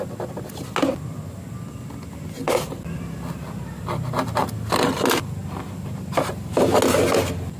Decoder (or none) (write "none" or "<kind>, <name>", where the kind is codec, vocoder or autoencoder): none